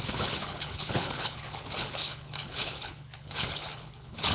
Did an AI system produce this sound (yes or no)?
yes